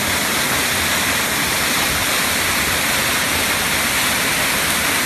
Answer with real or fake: real